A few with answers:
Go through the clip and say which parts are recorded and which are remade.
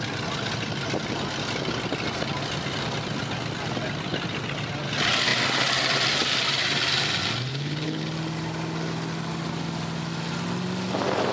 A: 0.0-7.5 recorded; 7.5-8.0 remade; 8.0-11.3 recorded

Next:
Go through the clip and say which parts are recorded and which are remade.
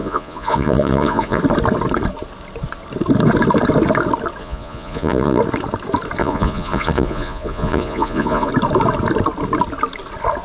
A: 0.0-1.4 remade; 1.4-4.4 recorded; 4.4-5.4 remade; 5.4-6.2 recorded; 6.2-8.5 remade; 8.5-10.4 recorded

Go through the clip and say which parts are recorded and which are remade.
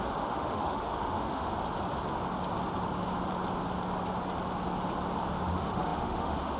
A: 0.0-1.5 remade; 1.5-5.5 recorded; 5.5-6.6 remade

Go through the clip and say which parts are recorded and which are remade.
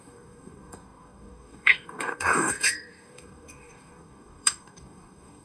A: 0.0-5.4 remade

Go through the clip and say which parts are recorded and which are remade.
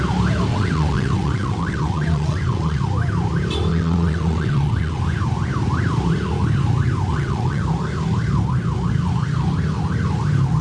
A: 0.0-0.5 recorded; 0.5-2.8 remade; 2.8-3.7 recorded; 3.7-5.0 remade; 5.0-7.1 recorded; 7.1-7.6 remade; 7.6-10.6 recorded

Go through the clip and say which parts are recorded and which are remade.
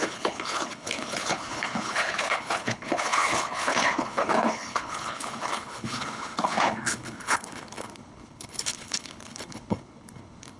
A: 0.0-10.6 remade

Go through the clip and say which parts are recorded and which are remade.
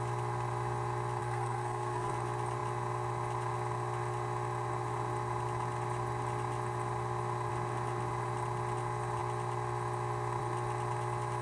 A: 0.0-1.2 recorded; 1.2-2.1 remade; 2.1-11.4 recorded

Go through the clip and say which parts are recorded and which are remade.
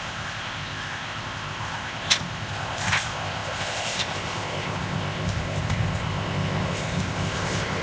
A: 0.0-7.8 remade